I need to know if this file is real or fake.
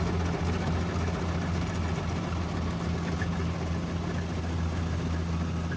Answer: real